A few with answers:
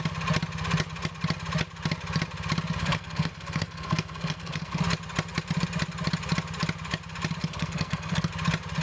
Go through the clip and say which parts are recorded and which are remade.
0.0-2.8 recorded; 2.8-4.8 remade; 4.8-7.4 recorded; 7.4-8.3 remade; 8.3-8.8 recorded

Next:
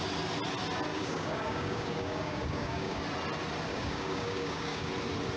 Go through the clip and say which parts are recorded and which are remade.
0.0-0.9 recorded; 0.9-3.0 remade; 3.0-3.7 recorded; 3.7-4.9 remade; 4.9-5.4 recorded